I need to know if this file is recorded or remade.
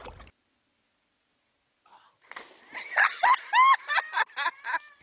recorded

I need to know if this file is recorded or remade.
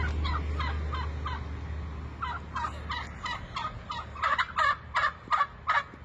recorded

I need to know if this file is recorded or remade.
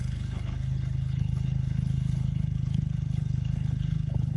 remade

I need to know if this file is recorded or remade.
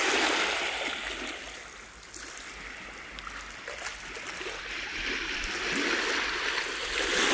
recorded